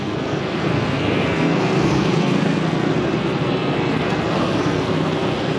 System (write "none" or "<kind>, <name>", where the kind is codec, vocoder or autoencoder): codec, SNAC